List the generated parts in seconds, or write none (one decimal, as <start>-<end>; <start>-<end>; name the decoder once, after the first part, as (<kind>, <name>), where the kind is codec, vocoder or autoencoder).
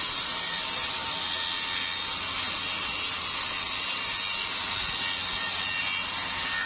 none